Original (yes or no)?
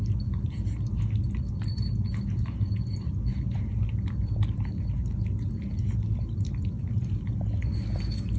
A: yes